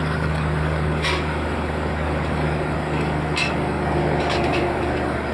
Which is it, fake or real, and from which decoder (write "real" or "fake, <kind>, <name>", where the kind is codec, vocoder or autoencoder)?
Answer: fake, codec, DAC